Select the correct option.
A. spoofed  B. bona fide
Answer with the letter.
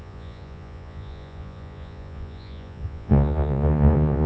A